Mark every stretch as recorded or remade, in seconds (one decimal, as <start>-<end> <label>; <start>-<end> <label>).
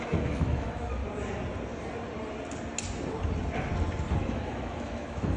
0.0-1.0 remade; 1.0-4.2 recorded; 4.2-5.4 remade